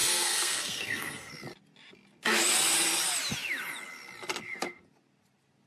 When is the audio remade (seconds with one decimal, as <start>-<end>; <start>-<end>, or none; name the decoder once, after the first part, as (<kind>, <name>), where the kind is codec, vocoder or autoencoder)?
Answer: 0.0-1.3 (codec, SNAC)